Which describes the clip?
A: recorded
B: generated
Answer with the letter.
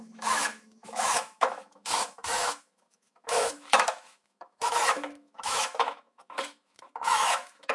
B